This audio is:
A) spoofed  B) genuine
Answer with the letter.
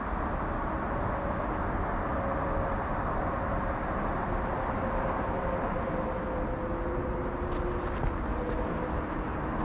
B